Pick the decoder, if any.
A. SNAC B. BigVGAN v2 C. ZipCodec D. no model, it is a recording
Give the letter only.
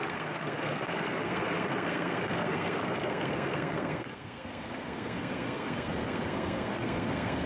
A